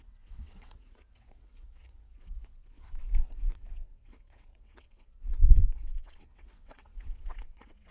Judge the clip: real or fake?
fake